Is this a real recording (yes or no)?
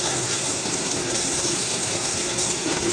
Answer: no